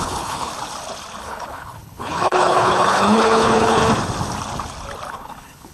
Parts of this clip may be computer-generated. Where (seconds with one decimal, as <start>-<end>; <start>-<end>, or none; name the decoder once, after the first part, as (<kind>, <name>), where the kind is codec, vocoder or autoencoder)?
0.0-0.5 (codec, HILCodec); 1.2-3.8; 5.1-5.7